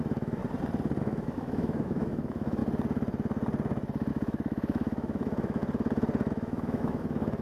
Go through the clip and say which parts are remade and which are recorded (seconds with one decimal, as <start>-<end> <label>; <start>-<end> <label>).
0.0-0.4 remade; 0.4-1.0 recorded; 1.0-2.6 remade; 2.6-4.1 recorded; 4.1-5.6 remade; 5.6-6.3 recorded; 6.3-7.4 remade